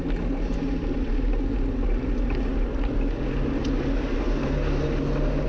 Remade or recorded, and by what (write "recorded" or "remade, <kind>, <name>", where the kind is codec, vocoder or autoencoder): recorded